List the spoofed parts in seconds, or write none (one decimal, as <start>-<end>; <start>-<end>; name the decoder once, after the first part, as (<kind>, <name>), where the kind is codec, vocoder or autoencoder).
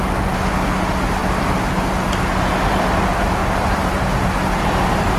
none